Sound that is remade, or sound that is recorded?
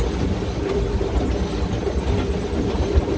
recorded